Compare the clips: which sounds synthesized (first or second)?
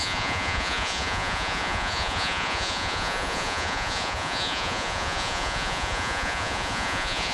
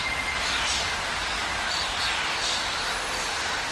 first